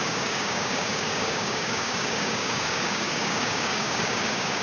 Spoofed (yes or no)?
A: yes